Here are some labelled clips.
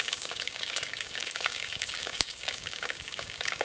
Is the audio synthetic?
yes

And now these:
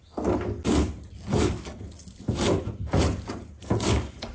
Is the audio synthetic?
no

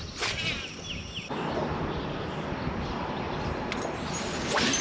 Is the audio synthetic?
no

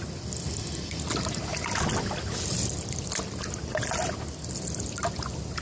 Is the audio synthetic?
no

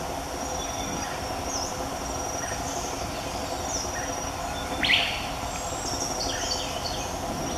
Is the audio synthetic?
no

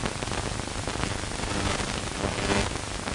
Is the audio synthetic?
no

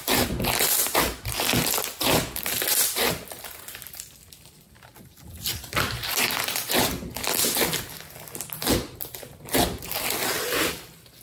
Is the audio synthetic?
no